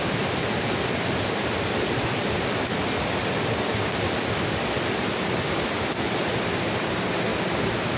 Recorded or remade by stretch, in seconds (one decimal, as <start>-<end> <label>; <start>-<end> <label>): 0.0-8.0 recorded